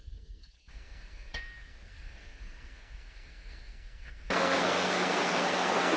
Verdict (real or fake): fake